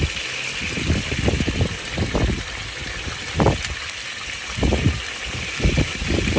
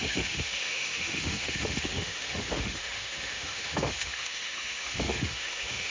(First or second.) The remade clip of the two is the second